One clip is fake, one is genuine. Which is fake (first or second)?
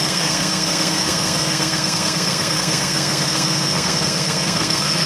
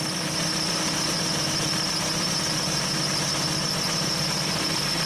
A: first